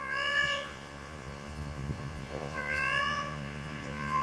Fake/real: fake